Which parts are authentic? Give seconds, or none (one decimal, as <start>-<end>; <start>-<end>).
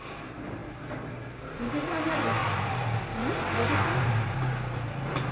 0.0-5.3